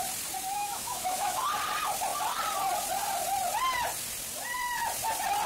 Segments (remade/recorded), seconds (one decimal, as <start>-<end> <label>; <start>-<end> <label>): 0.0-0.5 recorded; 0.5-1.4 remade; 1.4-5.5 recorded